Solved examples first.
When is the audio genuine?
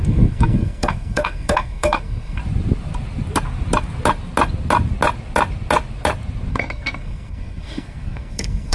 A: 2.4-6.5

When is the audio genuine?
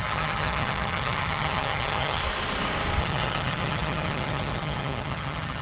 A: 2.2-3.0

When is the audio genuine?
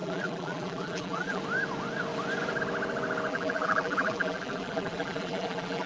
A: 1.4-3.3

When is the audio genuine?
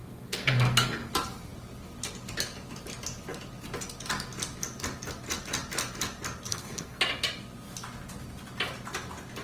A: 1.1-6.5; 7.0-9.4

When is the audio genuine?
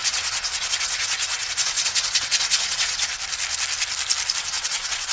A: 3.1-4.4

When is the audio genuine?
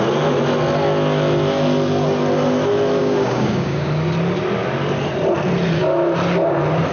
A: 0.0-3.0; 3.9-6.9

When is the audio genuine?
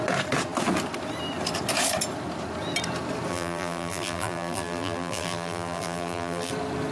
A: 0.0-3.3; 6.5-6.9